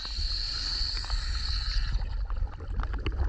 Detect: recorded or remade recorded